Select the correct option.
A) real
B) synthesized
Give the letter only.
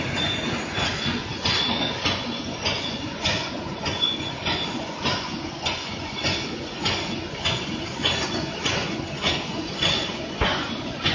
B